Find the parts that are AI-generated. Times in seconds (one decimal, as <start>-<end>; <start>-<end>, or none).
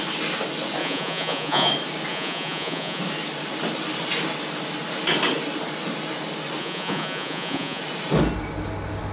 0.8-1.7; 2.1-3.0; 6.6-7.8